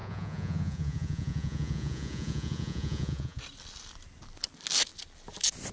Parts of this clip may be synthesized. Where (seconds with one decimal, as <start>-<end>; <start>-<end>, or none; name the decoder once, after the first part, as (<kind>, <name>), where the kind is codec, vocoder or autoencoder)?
0.0-3.4 (vocoder, Vocos)